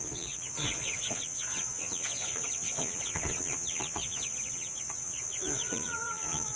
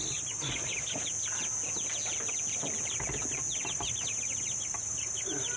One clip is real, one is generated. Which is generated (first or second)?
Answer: first